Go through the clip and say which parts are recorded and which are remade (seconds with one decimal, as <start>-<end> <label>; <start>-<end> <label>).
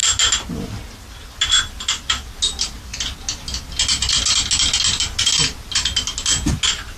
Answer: 0.0-7.0 recorded